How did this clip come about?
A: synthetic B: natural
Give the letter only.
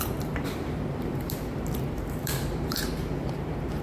A